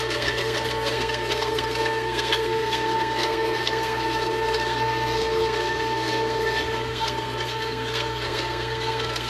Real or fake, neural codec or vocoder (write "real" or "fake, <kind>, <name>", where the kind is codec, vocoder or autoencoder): fake, codec, SNAC